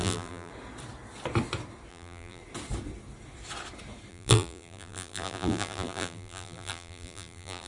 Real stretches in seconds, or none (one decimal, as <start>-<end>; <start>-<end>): 0.5-1.9; 2.4-4.1